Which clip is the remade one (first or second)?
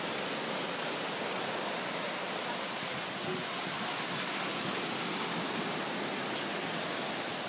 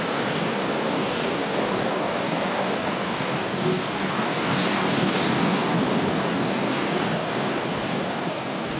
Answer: second